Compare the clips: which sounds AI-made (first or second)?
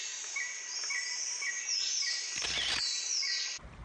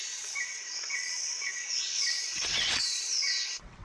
second